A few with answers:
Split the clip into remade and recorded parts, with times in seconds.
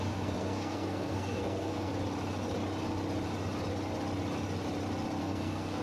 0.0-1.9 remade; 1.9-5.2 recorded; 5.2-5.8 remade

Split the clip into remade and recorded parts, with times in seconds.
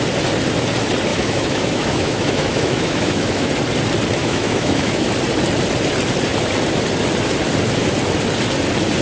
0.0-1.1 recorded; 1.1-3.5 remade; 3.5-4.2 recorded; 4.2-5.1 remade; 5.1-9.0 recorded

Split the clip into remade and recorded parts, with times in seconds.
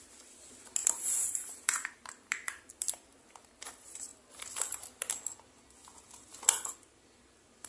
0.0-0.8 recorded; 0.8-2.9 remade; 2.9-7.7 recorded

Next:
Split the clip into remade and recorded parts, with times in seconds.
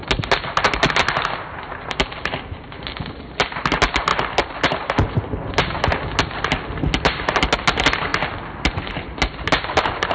0.0-10.1 recorded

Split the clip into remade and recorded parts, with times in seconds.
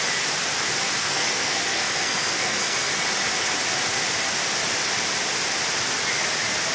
0.0-1.0 recorded; 1.0-2.9 remade; 2.9-6.7 recorded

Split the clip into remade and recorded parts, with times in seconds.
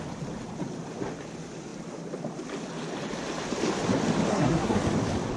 0.0-4.3 recorded; 4.3-4.8 remade; 4.8-5.4 recorded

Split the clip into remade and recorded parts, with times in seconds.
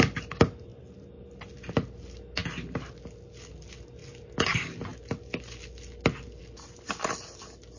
0.0-7.8 recorded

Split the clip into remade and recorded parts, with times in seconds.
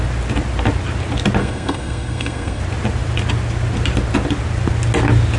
0.0-1.4 recorded; 1.4-2.6 remade; 2.6-5.4 recorded